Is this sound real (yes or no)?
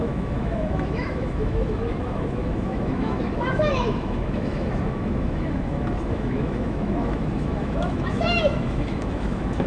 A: no